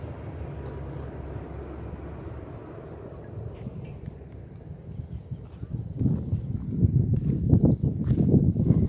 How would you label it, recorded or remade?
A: recorded